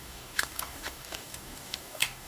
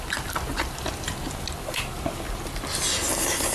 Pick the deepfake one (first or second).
first